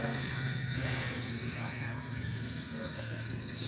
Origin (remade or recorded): remade